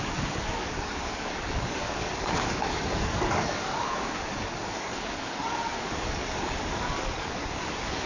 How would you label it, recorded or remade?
remade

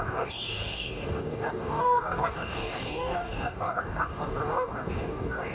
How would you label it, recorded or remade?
remade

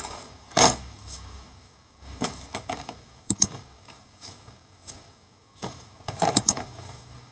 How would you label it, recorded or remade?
remade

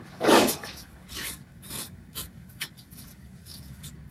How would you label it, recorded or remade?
remade